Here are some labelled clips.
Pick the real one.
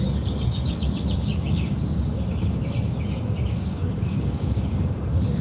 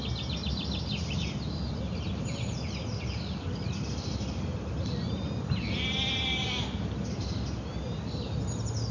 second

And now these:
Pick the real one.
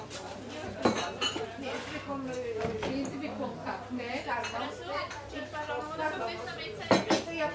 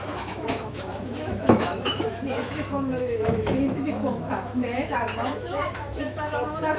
first